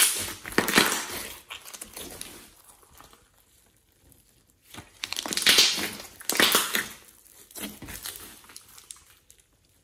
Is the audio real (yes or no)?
yes